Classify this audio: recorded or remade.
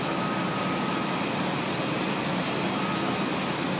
recorded